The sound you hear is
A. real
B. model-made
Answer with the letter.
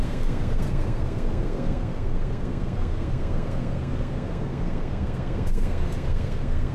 B